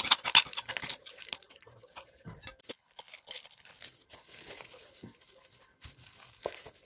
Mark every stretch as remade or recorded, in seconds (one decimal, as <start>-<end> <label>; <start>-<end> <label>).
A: 0.0-2.7 recorded; 2.7-3.8 remade; 3.8-6.9 recorded